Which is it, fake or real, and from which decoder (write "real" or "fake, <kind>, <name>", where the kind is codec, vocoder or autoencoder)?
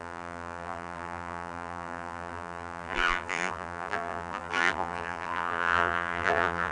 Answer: fake, vocoder, BigVGAN v2